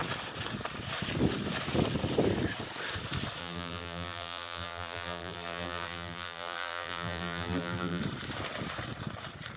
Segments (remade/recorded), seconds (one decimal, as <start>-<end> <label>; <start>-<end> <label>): 0.0-3.4 recorded; 3.4-8.0 remade; 8.0-9.6 recorded